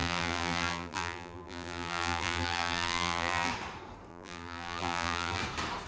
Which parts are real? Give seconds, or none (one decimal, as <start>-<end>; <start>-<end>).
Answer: 3.5-4.1; 5.4-5.9